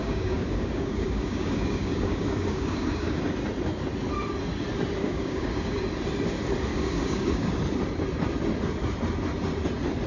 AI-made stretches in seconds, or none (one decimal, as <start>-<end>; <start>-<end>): 0.0-3.2; 5.0-5.8; 6.7-7.5